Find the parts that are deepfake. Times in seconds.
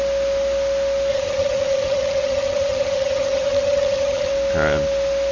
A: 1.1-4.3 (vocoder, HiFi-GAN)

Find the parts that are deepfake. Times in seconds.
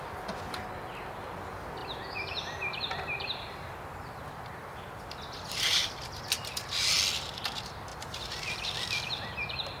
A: 1.8-3.9 (vocoder, BigVGAN v2); 5.7-6.4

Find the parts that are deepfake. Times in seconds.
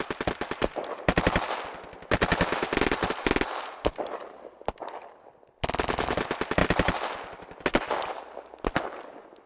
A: none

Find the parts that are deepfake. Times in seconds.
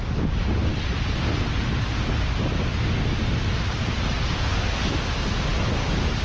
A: none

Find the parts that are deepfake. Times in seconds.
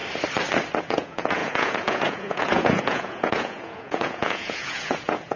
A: 0.8-5.4 (vocoder, Vocos)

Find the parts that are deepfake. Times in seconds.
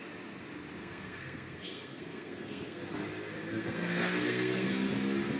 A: 0.8-2.8 (codec, SNAC); 3.5-4.7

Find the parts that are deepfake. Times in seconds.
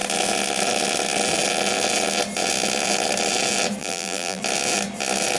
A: 3.8-4.4 (vocoder, BigVGAN v2)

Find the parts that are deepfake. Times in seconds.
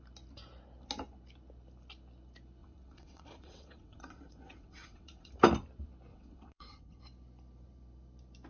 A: 2.6-5.3 (vocoder, WaveNeXt); 6.1-7.0